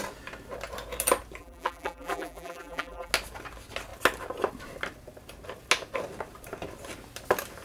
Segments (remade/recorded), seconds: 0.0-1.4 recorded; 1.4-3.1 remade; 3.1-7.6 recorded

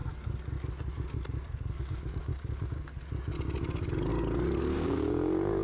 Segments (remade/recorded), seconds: 0.0-1.8 recorded; 1.8-2.9 remade; 2.9-4.6 recorded; 4.6-5.6 remade

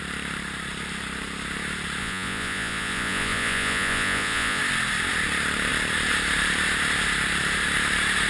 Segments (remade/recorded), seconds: 0.0-2.0 recorded; 2.0-4.6 remade; 4.6-8.3 recorded

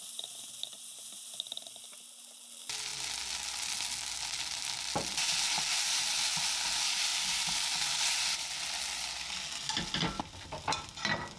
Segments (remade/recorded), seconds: 0.0-7.1 recorded; 7.1-7.7 remade; 7.7-11.4 recorded

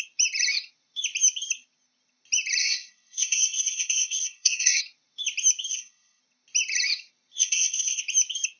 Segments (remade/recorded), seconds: 0.0-2.6 recorded; 2.6-4.8 remade; 4.8-5.7 recorded; 5.7-6.2 remade; 6.2-7.4 recorded; 7.4-8.0 remade; 8.0-8.6 recorded